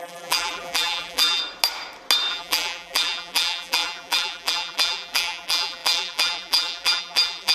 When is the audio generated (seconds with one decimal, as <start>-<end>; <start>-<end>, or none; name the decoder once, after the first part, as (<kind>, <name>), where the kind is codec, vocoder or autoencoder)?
0.0-1.4 (vocoder, BigVGAN v2); 2.3-7.5